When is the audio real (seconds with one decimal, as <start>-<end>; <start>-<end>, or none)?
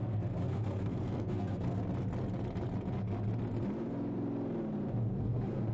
1.8-5.2